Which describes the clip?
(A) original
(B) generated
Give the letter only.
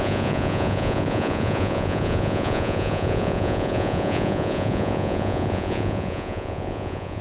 B